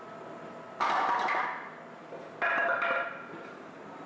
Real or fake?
real